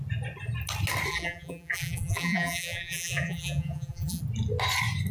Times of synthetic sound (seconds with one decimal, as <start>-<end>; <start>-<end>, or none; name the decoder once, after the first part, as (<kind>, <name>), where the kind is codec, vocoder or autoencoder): 1.1-4.2 (vocoder, BigVGAN v2)